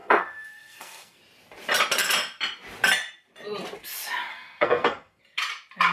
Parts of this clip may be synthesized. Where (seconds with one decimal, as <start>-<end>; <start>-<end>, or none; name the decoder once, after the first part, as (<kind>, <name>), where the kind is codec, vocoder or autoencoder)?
0.0-1.2 (codec, SNAC); 4.3-5.2